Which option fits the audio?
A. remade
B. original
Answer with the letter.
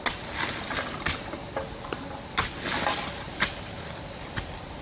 B